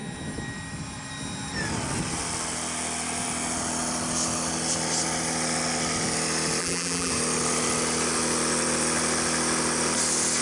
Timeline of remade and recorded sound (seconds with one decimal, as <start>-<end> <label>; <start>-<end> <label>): 0.0-6.6 recorded; 6.6-7.1 remade; 7.1-10.4 recorded